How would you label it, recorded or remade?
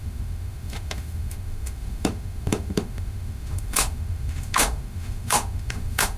remade